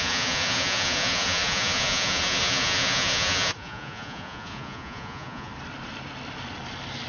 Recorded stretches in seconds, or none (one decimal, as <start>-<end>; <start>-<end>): 5.5-7.1